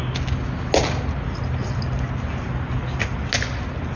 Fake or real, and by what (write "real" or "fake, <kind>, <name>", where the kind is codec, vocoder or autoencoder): real